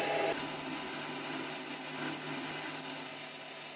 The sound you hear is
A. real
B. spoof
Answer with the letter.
A